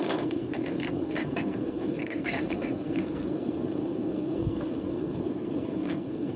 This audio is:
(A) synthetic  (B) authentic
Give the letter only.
A